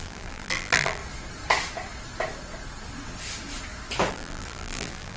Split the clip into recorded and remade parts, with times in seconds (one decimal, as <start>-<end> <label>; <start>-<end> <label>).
0.0-1.0 remade; 1.0-4.1 recorded; 4.1-5.2 remade